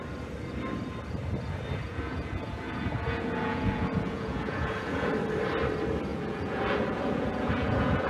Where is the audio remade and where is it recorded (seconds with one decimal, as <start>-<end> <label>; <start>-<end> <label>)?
0.0-1.9 recorded; 1.9-5.1 remade; 5.1-6.1 recorded; 6.1-8.1 remade